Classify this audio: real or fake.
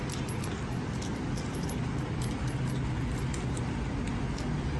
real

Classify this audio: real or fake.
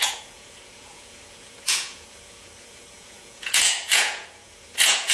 fake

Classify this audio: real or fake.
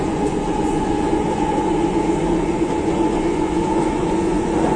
fake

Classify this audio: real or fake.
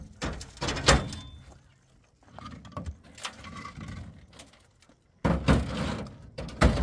real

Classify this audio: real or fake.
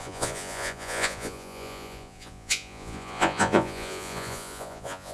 fake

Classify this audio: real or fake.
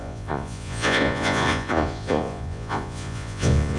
fake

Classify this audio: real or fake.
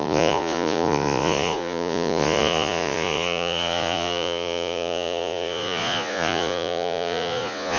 fake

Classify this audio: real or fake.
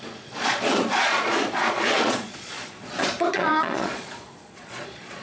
fake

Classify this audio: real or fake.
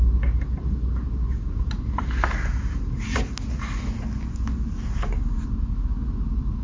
real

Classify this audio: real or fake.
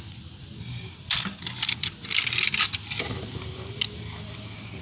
real